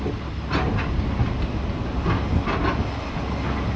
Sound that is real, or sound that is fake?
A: real